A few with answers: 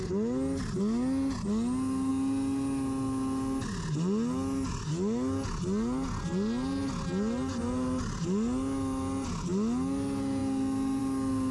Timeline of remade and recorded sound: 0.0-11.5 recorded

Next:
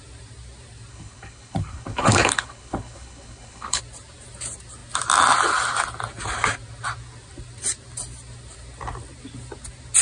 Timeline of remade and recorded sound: 0.0-0.9 recorded; 0.9-3.8 remade; 3.8-10.0 recorded

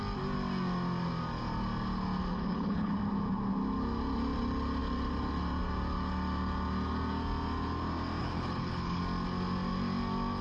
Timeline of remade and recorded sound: 0.0-2.3 recorded; 2.3-2.9 remade; 2.9-8.2 recorded; 8.2-9.0 remade; 9.0-10.4 recorded

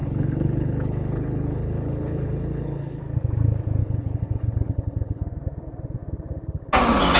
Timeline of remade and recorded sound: 0.0-3.0 remade; 3.0-3.8 recorded; 3.8-5.2 remade; 5.2-7.2 recorded